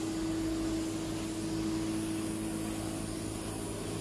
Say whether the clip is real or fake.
real